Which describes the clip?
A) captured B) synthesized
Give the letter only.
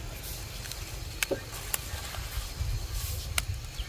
A